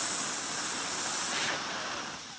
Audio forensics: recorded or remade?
recorded